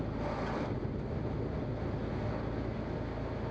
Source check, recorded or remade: recorded